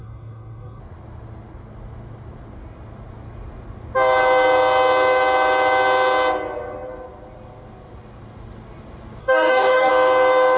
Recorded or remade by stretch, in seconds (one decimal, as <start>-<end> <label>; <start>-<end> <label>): 0.0-0.8 remade; 0.8-9.2 recorded; 9.2-9.9 remade; 9.9-10.6 recorded